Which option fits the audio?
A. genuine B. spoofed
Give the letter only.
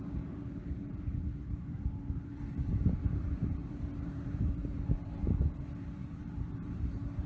B